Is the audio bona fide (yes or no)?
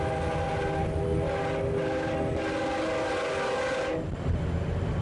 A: yes